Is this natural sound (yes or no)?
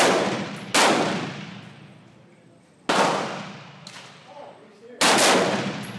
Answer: yes